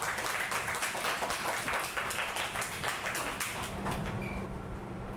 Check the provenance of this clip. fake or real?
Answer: real